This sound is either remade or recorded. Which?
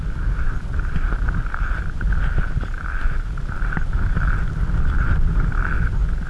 recorded